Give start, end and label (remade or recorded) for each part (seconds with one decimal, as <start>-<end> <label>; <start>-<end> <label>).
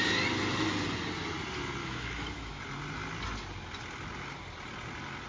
0.0-1.8 recorded; 1.8-2.6 remade; 2.6-5.3 recorded